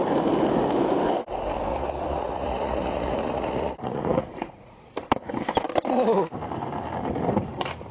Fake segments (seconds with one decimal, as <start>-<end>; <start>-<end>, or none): 1.7-4.9